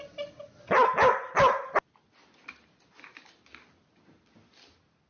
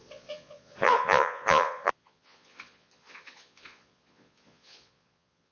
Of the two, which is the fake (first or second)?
second